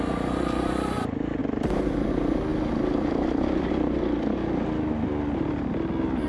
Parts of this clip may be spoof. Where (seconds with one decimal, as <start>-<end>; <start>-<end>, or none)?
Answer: 1.4-2.1; 2.5-3.7